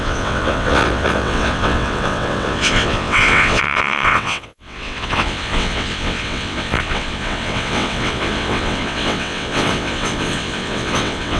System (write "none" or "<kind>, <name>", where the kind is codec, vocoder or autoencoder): vocoder, WaveNeXt